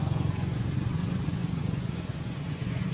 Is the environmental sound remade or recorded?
remade